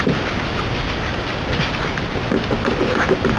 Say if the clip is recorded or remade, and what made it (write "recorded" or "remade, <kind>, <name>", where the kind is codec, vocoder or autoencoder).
recorded